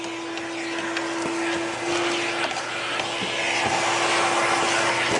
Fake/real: real